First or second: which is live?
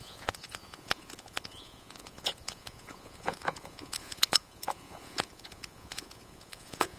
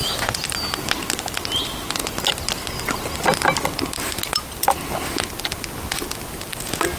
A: second